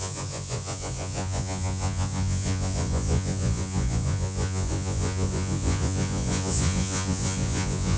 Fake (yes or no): yes